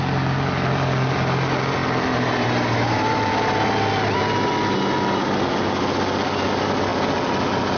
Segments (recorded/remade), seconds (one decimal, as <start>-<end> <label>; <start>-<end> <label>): 0.0-7.8 recorded